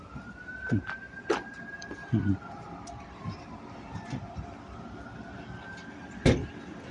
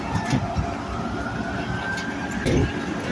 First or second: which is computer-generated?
first